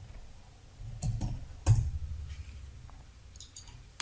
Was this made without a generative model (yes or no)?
yes